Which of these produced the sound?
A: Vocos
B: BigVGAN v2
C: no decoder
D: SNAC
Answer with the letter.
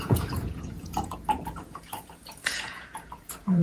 A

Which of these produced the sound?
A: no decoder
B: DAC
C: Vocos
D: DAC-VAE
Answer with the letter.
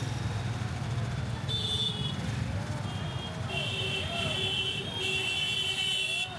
A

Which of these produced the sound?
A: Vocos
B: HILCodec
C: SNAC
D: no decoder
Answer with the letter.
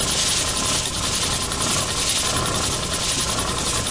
D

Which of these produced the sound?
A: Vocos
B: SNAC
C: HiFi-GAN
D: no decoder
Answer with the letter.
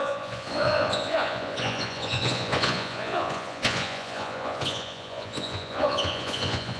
A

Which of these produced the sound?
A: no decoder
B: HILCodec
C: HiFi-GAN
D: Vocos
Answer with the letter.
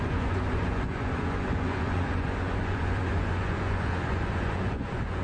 D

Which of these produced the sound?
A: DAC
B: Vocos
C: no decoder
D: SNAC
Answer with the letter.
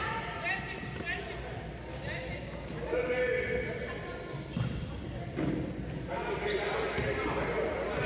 C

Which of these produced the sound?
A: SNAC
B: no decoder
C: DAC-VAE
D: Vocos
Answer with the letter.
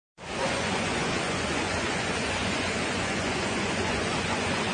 D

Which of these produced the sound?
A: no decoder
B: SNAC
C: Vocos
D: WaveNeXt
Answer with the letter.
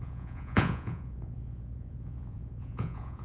C